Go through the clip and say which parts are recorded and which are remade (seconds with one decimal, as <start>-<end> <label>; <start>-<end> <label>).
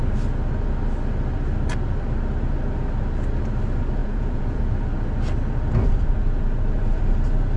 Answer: 0.0-4.0 recorded; 4.0-4.7 remade; 4.7-7.6 recorded